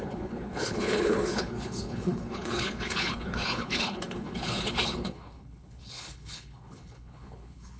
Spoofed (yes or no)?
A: yes